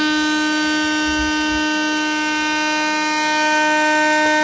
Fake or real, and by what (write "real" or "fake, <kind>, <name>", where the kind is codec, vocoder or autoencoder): real